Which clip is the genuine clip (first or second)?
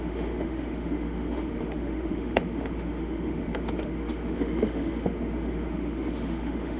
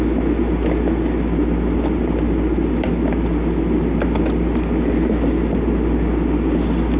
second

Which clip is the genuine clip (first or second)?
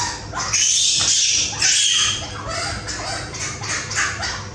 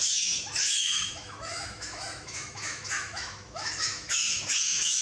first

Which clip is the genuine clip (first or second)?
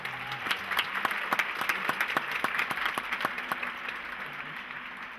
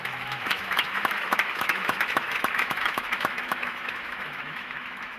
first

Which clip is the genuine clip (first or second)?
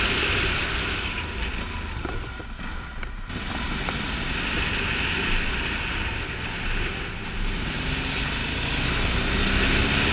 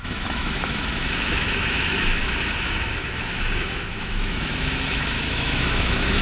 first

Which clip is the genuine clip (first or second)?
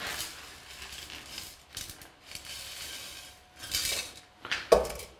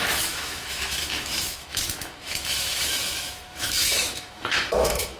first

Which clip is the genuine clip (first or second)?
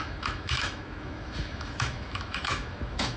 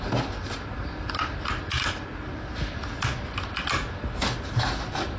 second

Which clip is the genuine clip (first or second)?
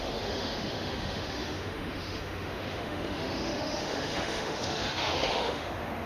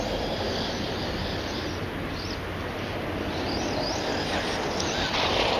second